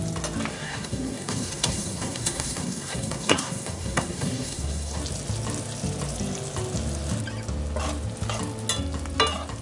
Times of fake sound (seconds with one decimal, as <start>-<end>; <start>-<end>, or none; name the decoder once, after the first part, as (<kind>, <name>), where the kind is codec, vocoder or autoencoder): 0.5-5.0 (codec, SNAC)